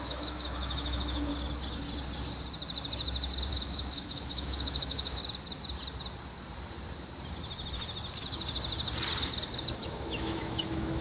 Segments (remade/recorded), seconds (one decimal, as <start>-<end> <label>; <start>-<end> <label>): 0.0-1.3 remade; 1.3-3.5 recorded; 3.5-5.2 remade; 5.2-9.7 recorded; 9.7-11.0 remade